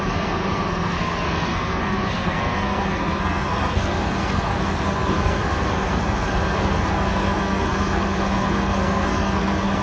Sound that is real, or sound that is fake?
fake